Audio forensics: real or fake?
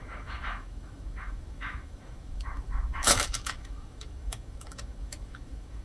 fake